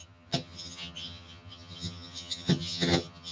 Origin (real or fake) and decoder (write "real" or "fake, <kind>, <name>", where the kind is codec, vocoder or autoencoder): fake, vocoder, HiFi-GAN